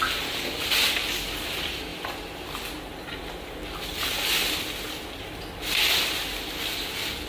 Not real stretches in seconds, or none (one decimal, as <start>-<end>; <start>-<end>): none